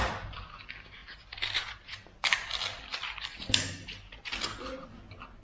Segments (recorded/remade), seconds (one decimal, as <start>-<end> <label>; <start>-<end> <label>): 0.0-5.4 recorded